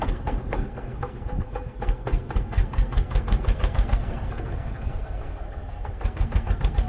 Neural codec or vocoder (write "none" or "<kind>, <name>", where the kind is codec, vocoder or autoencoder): codec, SNAC